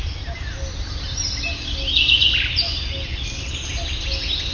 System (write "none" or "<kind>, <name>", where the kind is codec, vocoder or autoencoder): none